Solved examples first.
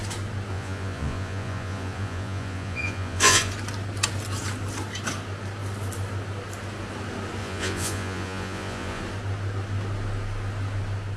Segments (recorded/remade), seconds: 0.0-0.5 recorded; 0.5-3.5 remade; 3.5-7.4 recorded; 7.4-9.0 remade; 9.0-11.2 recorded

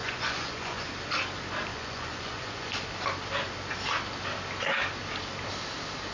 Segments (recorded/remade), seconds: 0.0-0.8 remade; 0.8-1.7 recorded; 1.7-2.7 remade; 2.7-6.1 recorded

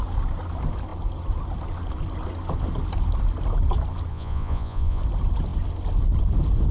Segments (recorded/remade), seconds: 0.0-4.1 recorded; 4.1-5.0 remade; 5.0-6.7 recorded